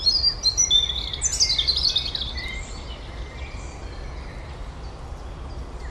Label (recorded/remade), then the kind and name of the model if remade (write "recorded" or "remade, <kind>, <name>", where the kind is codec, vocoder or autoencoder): recorded